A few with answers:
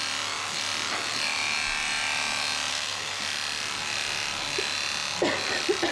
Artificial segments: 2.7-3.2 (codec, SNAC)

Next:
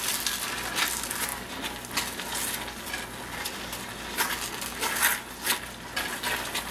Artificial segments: none

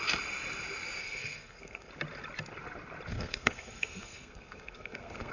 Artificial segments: 1.0-1.9 (codec, SNAC); 3.1-5.3